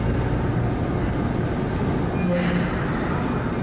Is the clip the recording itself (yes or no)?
yes